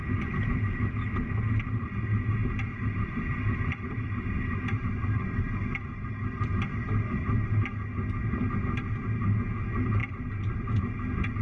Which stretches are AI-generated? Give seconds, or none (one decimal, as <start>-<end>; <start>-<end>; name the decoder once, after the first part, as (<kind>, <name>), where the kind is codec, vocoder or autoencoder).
2.4-7.5 (vocoder, BigVGAN v2); 10.0-10.8